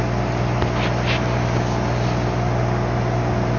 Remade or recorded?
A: recorded